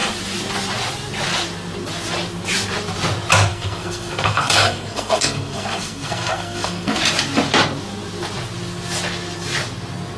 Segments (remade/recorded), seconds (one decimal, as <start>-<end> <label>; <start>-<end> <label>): 0.0-3.5 recorded; 3.5-7.0 remade; 7.0-10.2 recorded